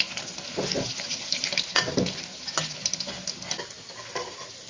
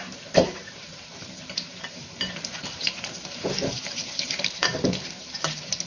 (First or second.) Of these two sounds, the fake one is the second